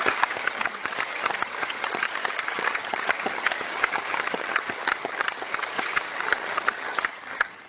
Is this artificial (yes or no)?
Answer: yes